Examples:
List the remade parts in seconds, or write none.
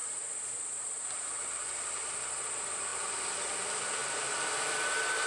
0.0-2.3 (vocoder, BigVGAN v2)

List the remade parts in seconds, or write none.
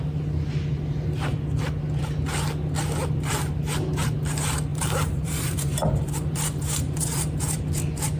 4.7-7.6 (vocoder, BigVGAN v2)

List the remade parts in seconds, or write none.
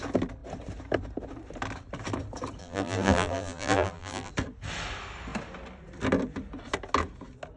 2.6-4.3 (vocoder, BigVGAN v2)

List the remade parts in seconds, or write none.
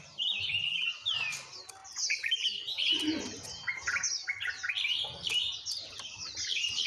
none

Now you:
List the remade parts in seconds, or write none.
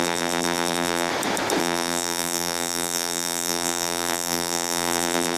0.0-1.1 (vocoder, BigVGAN v2); 1.6-5.4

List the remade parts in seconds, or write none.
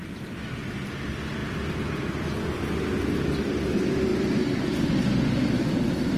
1.4-3.1 (vocoder, BigVGAN v2); 4.1-4.9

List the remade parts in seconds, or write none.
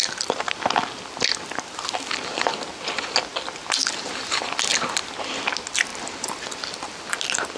0.0-3.3 (vocoder, BigVGAN v2); 3.9-4.7; 5.4-7.6